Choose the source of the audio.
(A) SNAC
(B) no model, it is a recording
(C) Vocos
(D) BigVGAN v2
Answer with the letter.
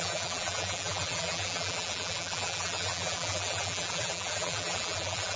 D